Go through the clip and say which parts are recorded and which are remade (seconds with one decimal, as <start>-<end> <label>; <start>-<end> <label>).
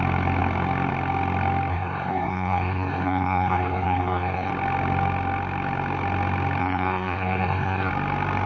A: 0.0-1.7 recorded; 1.7-4.5 remade; 4.5-6.6 recorded; 6.6-7.9 remade; 7.9-8.5 recorded